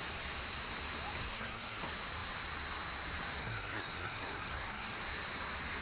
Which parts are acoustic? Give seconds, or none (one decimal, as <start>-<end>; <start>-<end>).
0.0-1.2; 1.8-3.4; 5.0-5.8